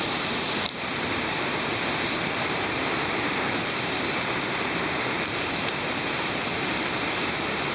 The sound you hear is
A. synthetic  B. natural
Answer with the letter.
A